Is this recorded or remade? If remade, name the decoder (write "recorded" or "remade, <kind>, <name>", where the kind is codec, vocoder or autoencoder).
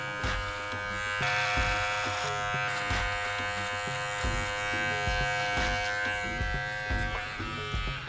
recorded